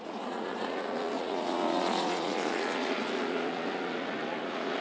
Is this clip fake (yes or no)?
yes